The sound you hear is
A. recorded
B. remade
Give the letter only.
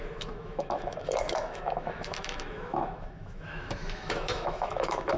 B